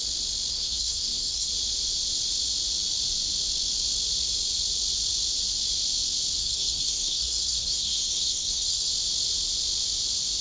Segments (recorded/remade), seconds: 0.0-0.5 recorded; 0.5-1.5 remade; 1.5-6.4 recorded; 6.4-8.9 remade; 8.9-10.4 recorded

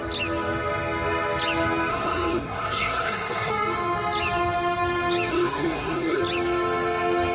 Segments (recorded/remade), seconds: 0.0-1.9 recorded; 1.9-3.5 remade; 3.5-5.3 recorded; 5.3-6.2 remade; 6.2-7.3 recorded